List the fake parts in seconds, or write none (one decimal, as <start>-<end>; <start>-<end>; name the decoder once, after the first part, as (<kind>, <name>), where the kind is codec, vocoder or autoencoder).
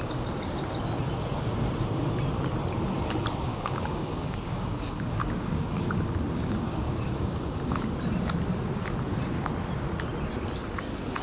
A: 3.5-7.8 (codec, DAC)